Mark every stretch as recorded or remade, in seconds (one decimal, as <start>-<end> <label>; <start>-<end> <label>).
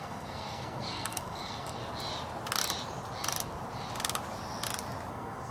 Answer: 0.0-1.8 remade; 1.8-5.1 recorded; 5.1-5.5 remade